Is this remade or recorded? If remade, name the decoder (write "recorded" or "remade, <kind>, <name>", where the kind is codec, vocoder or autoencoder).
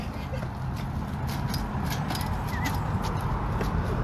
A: recorded